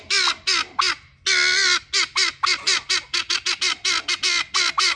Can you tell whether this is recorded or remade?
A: recorded